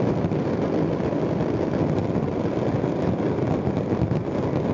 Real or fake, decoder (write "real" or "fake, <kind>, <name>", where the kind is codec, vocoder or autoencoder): real